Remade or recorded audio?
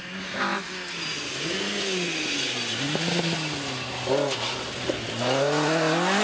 recorded